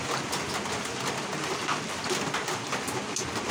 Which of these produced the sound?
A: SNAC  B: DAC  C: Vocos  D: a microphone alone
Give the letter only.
D